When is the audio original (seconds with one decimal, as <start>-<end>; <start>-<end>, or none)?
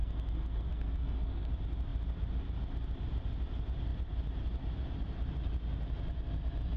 1.5-6.8